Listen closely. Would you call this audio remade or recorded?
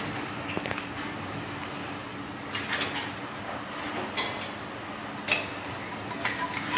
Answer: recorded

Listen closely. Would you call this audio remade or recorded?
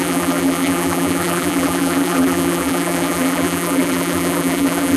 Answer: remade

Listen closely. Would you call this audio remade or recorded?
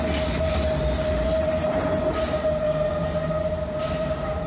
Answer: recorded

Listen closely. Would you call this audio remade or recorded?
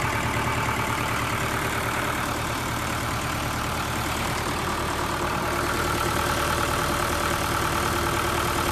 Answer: remade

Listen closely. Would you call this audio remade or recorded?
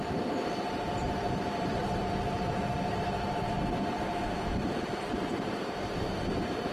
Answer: remade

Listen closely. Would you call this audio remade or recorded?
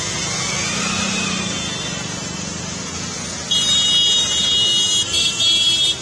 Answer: recorded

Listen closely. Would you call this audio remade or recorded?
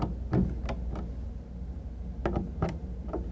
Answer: recorded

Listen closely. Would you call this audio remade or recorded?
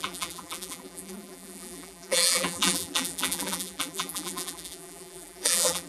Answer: remade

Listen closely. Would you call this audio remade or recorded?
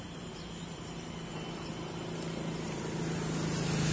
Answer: recorded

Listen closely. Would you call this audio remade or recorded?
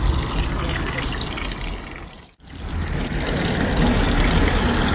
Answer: recorded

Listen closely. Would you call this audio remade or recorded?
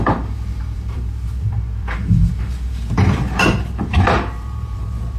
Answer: remade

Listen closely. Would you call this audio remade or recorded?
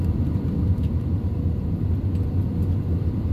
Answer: recorded